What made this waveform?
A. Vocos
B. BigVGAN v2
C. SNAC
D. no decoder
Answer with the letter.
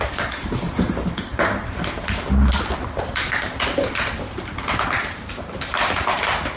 B